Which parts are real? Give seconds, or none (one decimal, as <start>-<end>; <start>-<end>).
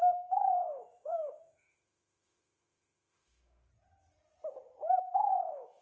3.7-5.0